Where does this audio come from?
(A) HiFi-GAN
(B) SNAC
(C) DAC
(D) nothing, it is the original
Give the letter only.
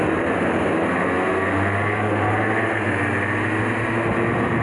D